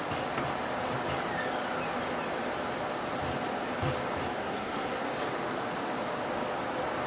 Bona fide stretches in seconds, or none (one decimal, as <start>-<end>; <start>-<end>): 0.0-4.4; 5.1-7.1